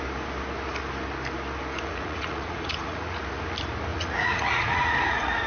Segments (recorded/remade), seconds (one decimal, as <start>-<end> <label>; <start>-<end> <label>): 0.0-1.9 recorded; 1.9-3.2 remade; 3.2-3.9 recorded; 3.9-5.5 remade